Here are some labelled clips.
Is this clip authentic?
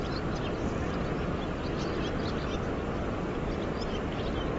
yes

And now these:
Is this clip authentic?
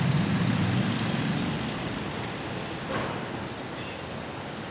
yes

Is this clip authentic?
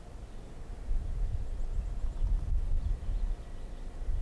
yes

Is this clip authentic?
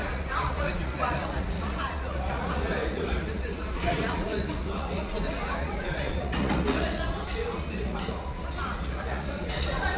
no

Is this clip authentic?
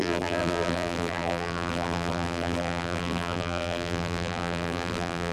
no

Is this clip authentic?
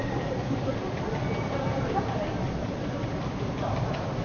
no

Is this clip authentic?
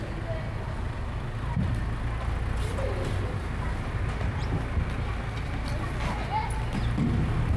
yes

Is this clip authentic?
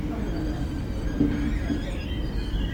no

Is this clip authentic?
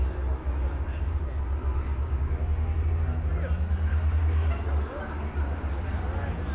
yes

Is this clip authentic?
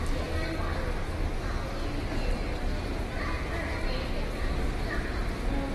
yes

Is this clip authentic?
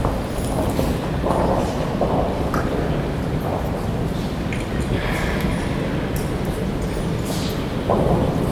yes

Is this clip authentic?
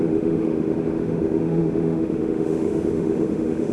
no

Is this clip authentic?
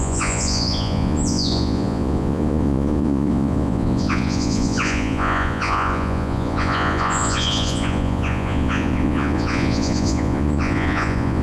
no